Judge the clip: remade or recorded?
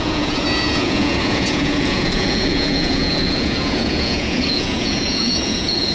remade